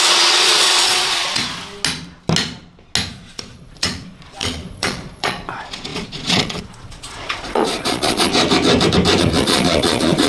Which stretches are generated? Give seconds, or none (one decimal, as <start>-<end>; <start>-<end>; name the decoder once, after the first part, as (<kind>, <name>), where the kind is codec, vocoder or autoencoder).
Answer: 0.0-1.5 (vocoder, Vocos); 3.1-8.3; 9.2-10.3